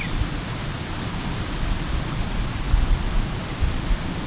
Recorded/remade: recorded